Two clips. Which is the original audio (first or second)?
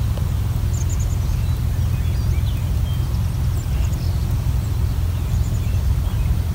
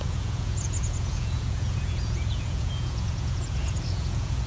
first